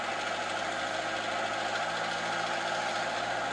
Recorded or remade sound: recorded